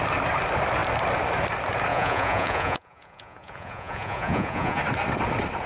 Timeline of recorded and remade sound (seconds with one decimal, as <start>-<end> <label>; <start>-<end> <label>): 0.0-1.9 recorded; 1.9-4.8 remade; 4.8-5.7 recorded